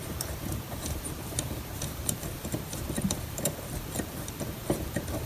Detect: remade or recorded remade